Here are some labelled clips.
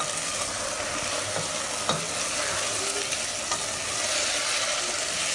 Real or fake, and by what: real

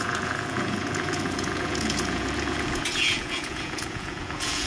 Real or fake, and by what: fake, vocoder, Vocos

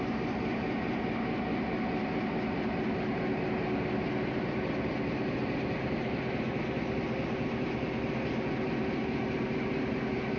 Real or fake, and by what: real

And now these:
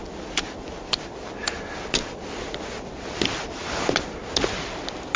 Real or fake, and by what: real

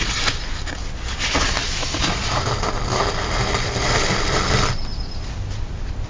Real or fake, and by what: real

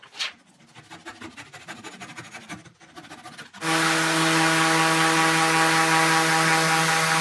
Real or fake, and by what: real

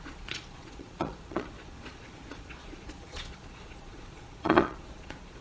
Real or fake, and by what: fake, vocoder, Vocos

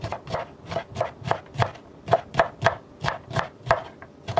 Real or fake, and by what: real